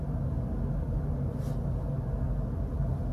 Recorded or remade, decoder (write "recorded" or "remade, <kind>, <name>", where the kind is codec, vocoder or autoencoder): recorded